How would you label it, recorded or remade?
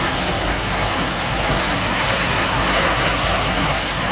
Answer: remade